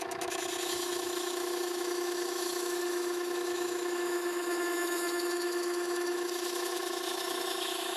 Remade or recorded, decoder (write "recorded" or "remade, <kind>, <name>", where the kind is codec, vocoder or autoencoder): remade, autoencoder, DAC-VAE